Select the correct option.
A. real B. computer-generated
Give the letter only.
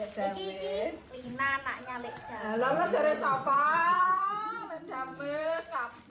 B